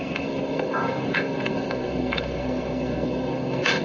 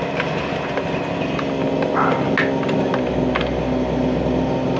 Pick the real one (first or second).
second